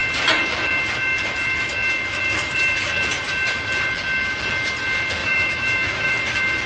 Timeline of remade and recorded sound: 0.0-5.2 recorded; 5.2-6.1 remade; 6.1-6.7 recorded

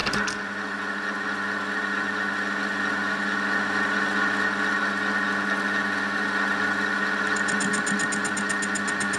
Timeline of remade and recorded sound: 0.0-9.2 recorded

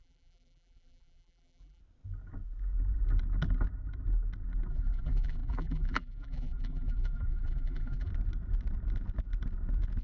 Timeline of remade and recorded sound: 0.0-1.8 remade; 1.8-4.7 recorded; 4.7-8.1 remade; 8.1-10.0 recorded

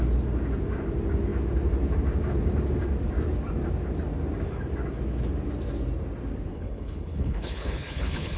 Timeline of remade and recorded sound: 0.0-6.5 recorded; 6.5-8.4 remade